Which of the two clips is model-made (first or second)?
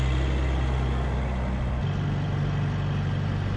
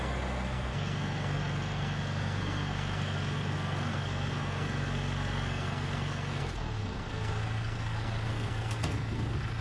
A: second